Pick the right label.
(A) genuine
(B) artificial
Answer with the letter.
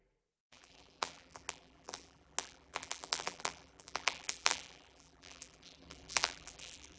B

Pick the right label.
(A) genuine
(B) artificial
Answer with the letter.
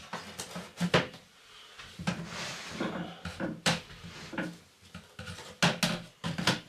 A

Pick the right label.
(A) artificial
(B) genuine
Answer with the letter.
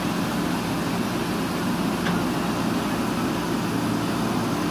B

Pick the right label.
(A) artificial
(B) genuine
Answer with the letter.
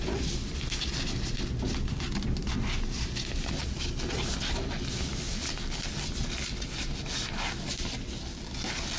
B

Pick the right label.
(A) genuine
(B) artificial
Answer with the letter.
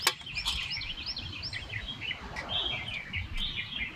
A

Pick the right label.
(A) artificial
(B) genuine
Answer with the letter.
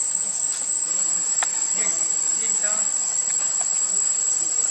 A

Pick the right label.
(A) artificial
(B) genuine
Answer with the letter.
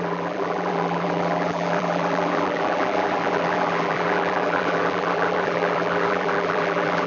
A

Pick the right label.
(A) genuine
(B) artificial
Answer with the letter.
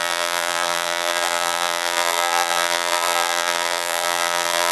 B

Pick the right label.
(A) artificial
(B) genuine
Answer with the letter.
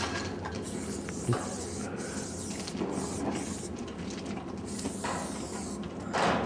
B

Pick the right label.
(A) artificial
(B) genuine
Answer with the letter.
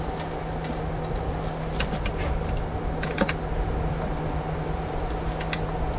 B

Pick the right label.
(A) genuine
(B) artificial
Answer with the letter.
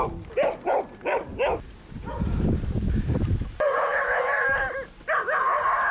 A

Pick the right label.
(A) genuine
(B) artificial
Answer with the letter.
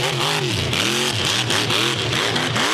A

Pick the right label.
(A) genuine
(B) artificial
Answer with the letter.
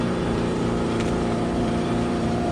B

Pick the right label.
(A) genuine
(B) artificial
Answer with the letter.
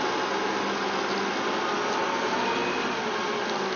A